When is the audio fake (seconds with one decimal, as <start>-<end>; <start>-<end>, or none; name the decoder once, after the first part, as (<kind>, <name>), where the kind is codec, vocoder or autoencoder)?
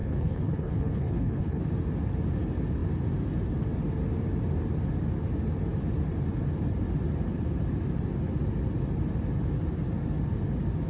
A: 0.0-1.6 (codec, HILCodec)